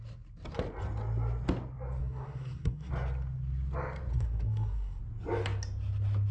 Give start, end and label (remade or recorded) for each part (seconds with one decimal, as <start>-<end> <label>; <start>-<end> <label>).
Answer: 0.0-2.0 recorded; 2.0-2.9 remade; 2.9-4.1 recorded; 4.1-5.0 remade; 5.0-6.3 recorded